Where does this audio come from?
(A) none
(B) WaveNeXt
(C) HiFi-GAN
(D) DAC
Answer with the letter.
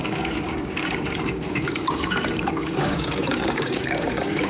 D